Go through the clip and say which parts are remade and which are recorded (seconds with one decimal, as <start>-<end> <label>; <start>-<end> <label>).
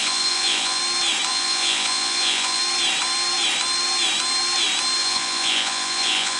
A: 0.0-0.8 remade; 0.8-1.3 recorded; 1.3-2.6 remade; 2.6-5.0 recorded; 5.0-6.4 remade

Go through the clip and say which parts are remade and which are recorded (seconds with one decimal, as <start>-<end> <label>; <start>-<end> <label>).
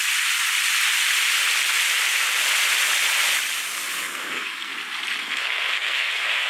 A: 0.0-3.9 recorded; 3.9-4.7 remade; 4.7-5.2 recorded; 5.2-6.5 remade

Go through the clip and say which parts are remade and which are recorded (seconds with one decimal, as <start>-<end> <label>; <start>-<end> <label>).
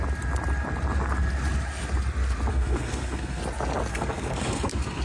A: 0.0-2.5 recorded; 2.5-3.4 remade; 3.4-3.9 recorded; 3.9-5.0 remade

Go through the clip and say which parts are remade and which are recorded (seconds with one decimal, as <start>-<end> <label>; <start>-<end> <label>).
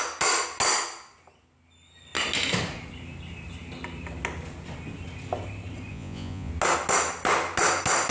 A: 0.0-5.9 recorded; 5.9-6.5 remade; 6.5-8.1 recorded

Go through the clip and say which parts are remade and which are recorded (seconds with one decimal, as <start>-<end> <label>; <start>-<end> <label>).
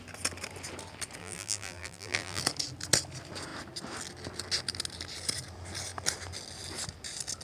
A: 0.0-1.2 recorded; 1.2-2.4 remade; 2.4-7.4 recorded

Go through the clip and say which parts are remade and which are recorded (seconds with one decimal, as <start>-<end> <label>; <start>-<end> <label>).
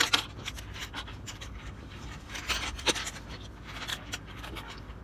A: 0.0-0.8 recorded; 0.8-2.4 remade; 2.4-3.9 recorded; 3.9-5.0 remade